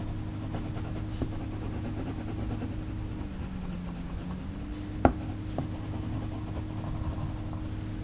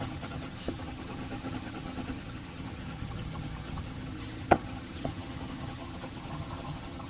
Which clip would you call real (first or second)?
first